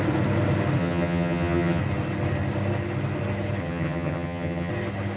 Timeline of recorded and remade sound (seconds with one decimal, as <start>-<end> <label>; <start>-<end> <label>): 0.0-0.8 recorded; 0.8-1.8 remade; 1.8-3.6 recorded; 3.6-4.7 remade; 4.7-5.2 recorded